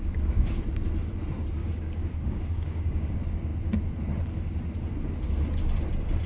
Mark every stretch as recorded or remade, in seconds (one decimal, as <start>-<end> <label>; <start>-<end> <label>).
0.0-0.6 remade; 0.6-1.6 recorded; 1.6-3.1 remade; 3.1-6.3 recorded